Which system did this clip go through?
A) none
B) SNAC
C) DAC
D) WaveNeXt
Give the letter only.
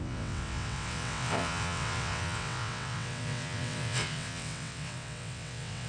D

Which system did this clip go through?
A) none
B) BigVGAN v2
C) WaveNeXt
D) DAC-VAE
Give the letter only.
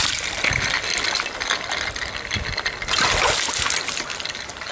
A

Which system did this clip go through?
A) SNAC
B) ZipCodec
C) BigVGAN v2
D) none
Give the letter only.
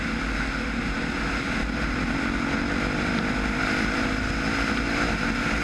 D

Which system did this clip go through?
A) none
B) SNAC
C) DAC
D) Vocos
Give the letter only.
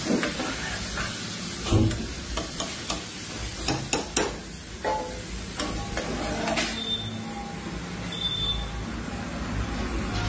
A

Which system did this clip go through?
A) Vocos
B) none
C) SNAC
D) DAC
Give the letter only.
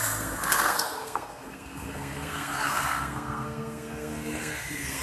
C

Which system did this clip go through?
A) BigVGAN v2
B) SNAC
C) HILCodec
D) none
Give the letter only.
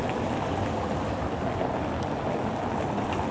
D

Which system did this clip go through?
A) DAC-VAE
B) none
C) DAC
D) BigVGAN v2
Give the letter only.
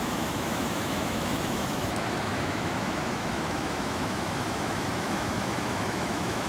A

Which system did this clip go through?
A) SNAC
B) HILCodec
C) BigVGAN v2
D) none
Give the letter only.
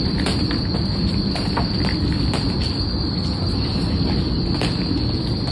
D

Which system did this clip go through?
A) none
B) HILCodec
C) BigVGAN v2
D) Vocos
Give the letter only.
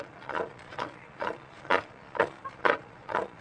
D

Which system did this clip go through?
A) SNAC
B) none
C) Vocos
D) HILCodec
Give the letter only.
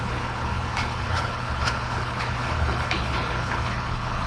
D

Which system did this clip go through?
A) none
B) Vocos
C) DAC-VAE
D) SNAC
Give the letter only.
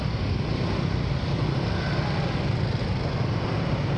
A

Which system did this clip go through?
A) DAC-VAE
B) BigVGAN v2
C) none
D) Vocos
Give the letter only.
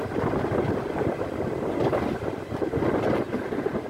C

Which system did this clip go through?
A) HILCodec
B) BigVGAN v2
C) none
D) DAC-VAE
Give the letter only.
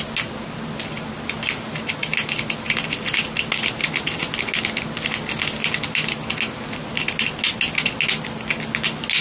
C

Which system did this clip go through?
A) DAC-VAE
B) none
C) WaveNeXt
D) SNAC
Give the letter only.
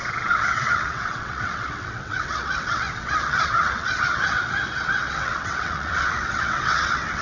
C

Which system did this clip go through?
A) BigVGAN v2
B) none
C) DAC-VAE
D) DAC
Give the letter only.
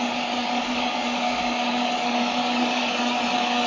D